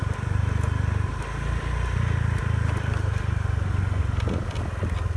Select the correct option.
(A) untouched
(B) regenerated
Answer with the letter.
A